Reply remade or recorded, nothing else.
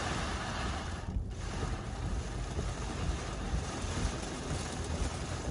remade